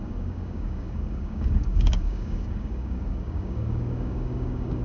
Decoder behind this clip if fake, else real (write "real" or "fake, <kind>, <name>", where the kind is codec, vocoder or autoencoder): fake, codec, DAC